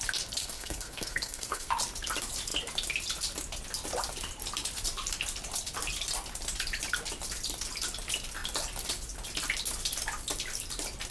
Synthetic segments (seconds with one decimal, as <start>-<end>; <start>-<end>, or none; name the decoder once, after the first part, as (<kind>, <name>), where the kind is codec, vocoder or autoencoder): 0.4-1.7 (codec, SNAC)